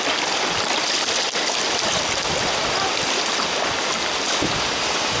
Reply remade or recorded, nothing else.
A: recorded